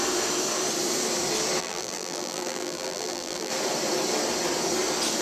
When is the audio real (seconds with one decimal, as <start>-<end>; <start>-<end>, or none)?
0.0-1.6; 3.5-5.2